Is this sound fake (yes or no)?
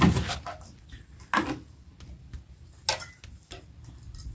no